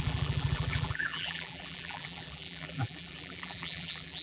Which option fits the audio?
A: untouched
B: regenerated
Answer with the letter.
B